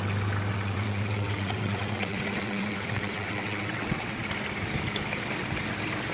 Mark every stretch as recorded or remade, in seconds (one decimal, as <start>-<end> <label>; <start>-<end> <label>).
0.0-0.5 recorded; 0.5-4.2 remade; 4.2-6.1 recorded